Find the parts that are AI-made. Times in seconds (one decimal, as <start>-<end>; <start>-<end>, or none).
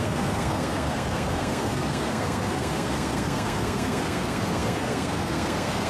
0.0-5.9